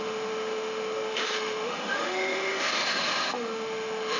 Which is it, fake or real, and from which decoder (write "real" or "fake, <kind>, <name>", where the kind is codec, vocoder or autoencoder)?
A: fake, autoencoder, DAC-VAE